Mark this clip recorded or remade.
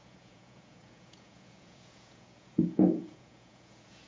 remade